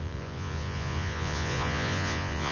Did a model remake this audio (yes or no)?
yes